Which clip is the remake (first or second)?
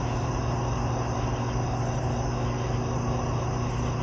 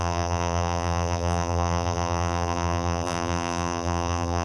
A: second